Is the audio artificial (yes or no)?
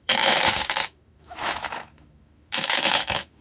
yes